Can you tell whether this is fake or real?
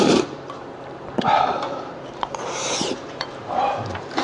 fake